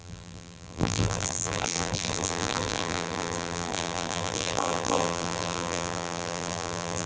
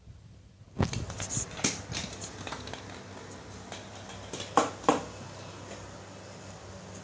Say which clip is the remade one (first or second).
first